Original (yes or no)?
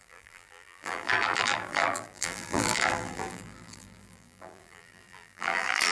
no